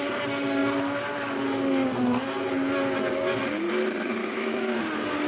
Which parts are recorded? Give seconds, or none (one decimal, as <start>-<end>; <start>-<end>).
0.0-4.2; 4.8-5.3